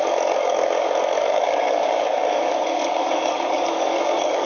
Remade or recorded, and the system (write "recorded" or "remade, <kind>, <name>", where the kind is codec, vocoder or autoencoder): remade, codec, DAC